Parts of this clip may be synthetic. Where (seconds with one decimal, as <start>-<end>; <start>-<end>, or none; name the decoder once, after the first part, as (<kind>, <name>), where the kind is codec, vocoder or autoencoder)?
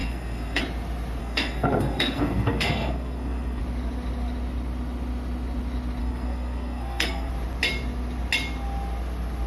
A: 0.0-0.6 (codec, SNAC); 1.2-3.6; 6.0-7.3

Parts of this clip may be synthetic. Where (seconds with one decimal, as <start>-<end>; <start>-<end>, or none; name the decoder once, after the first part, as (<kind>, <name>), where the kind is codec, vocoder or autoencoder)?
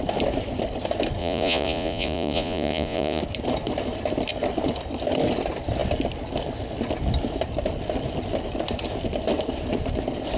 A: 1.2-3.2 (vocoder, Vocos)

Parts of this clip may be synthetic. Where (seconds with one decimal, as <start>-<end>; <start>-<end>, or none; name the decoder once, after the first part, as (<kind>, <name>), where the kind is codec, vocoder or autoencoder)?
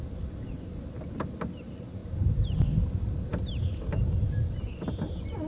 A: none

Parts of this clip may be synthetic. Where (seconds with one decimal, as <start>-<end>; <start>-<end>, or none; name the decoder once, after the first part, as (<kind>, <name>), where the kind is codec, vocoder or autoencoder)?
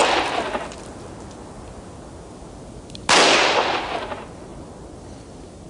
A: none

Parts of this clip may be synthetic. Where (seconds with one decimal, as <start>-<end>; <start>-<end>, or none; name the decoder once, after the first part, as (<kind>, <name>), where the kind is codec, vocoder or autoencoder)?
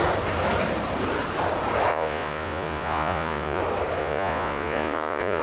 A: 1.9-3.6 (vocoder, Vocos); 4.0-5.4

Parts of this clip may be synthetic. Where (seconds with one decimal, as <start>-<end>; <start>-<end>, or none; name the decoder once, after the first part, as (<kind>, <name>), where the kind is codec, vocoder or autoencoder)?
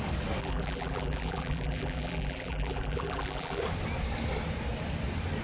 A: 0.4-3.6 (vocoder, BigVGAN v2)